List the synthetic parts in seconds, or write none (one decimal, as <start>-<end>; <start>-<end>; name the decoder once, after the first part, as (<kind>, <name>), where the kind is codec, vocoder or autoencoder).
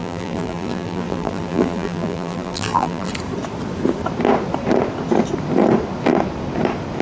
0.0-3.1 (vocoder, BigVGAN v2)